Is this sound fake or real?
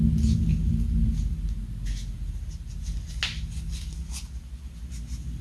real